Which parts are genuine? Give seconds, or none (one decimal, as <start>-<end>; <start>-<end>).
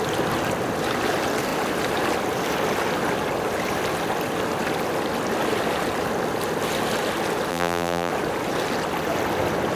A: 0.0-7.5; 8.1-9.8